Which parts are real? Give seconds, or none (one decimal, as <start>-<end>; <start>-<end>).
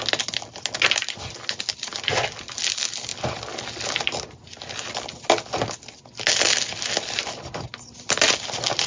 0.0-8.9